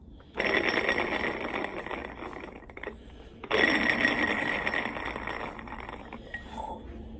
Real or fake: real